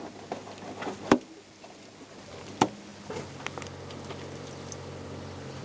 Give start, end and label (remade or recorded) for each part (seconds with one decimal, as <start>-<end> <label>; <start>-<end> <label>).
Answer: 0.0-5.6 recorded